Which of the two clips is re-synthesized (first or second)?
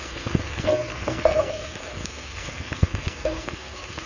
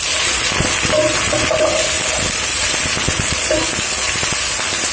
first